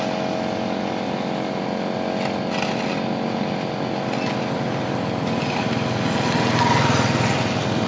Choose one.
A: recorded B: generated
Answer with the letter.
A